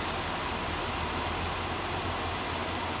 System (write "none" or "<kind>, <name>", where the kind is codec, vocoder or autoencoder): none